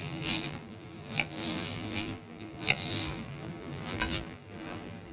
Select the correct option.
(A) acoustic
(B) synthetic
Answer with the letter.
B